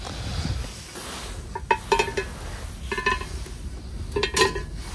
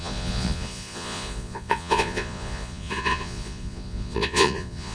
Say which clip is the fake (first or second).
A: second